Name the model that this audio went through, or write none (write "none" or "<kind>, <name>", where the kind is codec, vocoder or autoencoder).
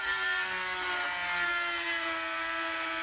none